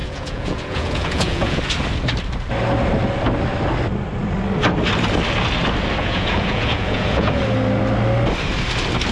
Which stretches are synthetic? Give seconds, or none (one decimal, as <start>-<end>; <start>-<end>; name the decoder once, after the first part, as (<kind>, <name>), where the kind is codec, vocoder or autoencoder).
0.0-1.6 (vocoder, Vocos); 6.0-7.4